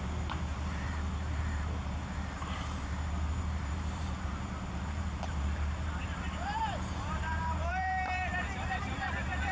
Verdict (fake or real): fake